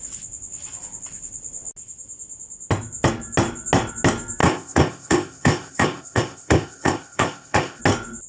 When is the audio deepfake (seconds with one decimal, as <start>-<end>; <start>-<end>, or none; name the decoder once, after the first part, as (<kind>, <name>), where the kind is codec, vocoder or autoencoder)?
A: 4.4-7.8 (codec, ZipCodec)